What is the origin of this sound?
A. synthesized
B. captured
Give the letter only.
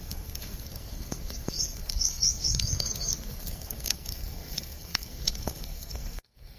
A